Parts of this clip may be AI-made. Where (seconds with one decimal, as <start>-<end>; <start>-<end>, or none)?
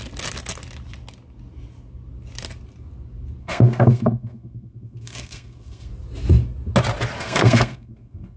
3.4-5.9; 7.2-8.4